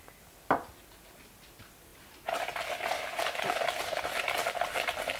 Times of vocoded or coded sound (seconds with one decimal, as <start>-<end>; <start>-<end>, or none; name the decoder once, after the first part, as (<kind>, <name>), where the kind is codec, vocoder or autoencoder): none